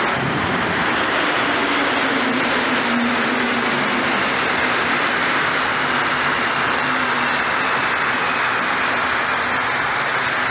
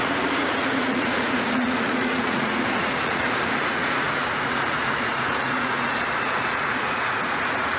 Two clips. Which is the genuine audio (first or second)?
first